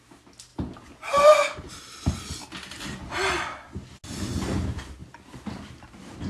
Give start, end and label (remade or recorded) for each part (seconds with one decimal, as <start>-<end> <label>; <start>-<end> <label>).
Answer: 0.0-6.3 recorded